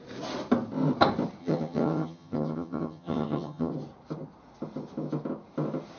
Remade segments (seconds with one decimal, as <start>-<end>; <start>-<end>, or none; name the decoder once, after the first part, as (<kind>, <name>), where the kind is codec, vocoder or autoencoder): 1.4-3.7 (vocoder, HiFi-GAN)